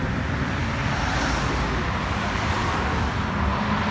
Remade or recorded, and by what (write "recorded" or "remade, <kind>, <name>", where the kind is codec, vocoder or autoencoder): recorded